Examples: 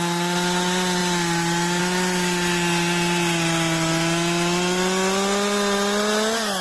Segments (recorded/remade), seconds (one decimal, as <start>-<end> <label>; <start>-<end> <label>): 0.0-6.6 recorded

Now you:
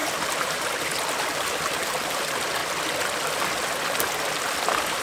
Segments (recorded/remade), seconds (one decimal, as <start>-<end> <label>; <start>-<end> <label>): 0.0-0.7 remade; 0.7-1.3 recorded; 1.3-2.2 remade; 2.2-5.0 recorded

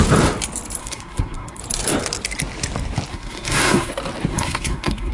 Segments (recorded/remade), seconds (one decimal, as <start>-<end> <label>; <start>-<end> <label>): 0.0-0.8 recorded; 0.8-1.6 remade; 1.6-3.1 recorded; 3.1-3.9 remade; 3.9-4.3 recorded; 4.3-5.1 remade

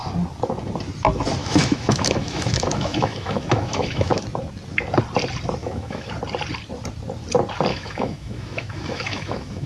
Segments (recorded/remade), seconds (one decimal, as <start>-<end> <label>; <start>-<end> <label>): 0.0-1.4 recorded; 1.4-4.2 remade; 4.2-5.6 recorded; 5.6-6.1 remade; 6.1-7.7 recorded; 7.7-9.7 remade

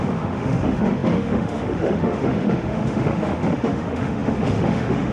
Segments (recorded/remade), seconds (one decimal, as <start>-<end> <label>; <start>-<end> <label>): 0.0-5.1 remade

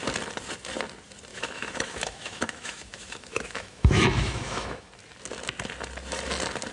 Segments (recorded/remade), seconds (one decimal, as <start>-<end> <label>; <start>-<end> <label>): 0.0-1.3 recorded; 1.3-4.9 remade; 4.9-6.7 recorded

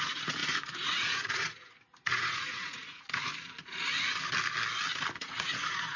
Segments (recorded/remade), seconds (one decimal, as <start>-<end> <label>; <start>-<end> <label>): 0.0-3.3 remade; 3.3-5.2 recorded; 5.2-6.0 remade